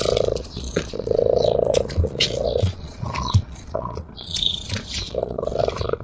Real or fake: fake